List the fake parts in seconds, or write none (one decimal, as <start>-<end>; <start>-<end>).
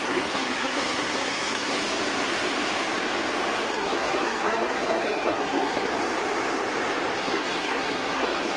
0.0-1.8; 3.7-5.9; 7.2-8.6